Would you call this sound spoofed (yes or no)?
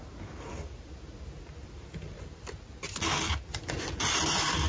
no